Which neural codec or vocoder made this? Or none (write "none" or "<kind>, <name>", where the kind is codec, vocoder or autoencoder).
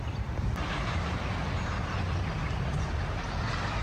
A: vocoder, BigVGAN v2